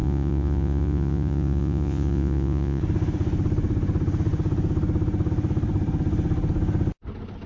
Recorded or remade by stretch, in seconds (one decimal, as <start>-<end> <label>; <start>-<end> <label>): 0.0-2.8 remade; 2.8-7.5 recorded